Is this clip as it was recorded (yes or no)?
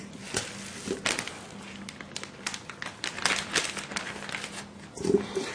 yes